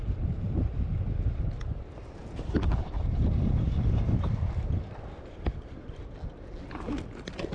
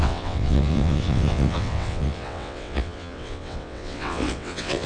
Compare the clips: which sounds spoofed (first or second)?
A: second